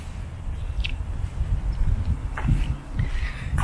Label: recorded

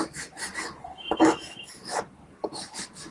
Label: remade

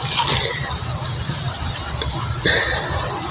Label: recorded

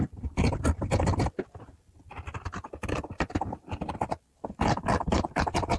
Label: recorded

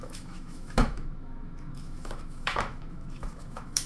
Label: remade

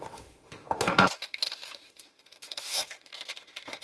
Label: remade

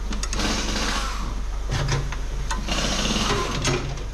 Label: recorded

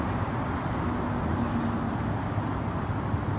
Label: recorded